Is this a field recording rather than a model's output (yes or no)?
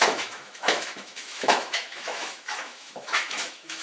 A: no